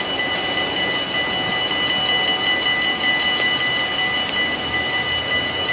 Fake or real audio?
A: real